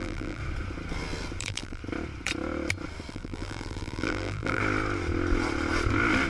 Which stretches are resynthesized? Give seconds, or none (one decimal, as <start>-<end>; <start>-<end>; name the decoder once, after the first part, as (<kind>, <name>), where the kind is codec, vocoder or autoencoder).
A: 0.0-0.4 (vocoder, BigVGAN v2); 1.4-1.8; 3.1-4.6